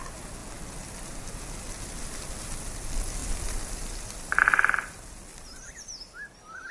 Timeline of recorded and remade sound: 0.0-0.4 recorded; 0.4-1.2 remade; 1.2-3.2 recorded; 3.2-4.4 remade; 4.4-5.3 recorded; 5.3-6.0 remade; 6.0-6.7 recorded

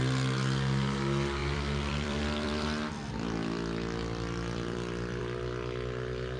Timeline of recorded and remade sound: 0.0-1.4 recorded; 1.4-5.2 remade; 5.2-6.4 recorded